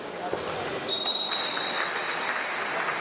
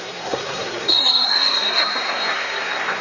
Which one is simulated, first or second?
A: second